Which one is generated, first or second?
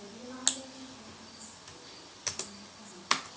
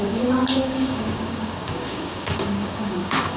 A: second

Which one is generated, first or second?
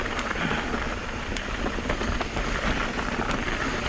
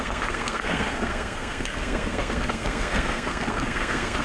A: second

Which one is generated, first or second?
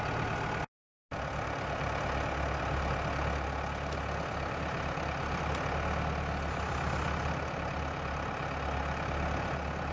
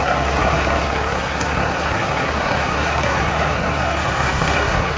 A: second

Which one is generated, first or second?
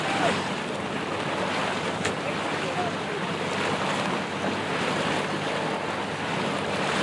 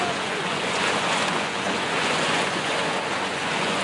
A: second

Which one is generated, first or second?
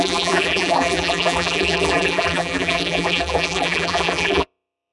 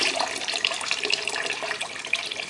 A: first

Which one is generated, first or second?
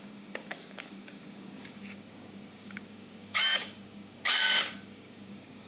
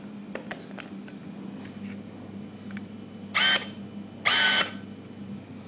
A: first